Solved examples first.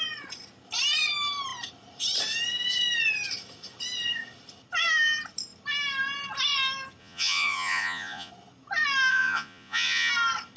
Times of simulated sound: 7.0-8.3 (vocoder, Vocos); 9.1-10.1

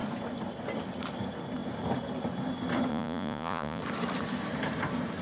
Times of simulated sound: 2.9-3.8 (vocoder, Vocos)

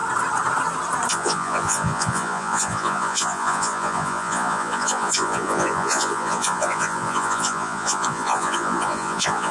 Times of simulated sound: 1.1-9.5 (vocoder, Vocos)

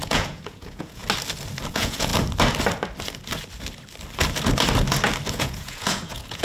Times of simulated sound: 0.0-1.0 (vocoder, Vocos); 1.7-2.1; 5.3-6.4

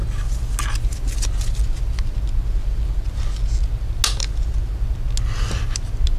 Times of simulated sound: none

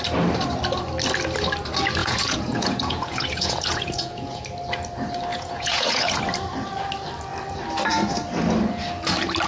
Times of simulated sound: 2.0-4.4 (vocoder, Vocos); 5.3-6.2

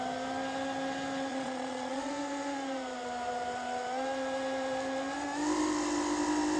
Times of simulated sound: 1.3-2.1 (vocoder, Vocos)